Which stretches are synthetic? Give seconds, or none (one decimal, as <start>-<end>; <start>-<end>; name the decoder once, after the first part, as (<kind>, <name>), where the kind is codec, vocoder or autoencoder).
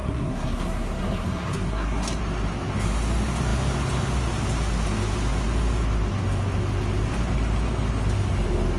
0.0-2.2 (codec, SNAC)